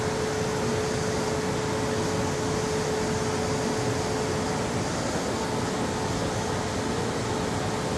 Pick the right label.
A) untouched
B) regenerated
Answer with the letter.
A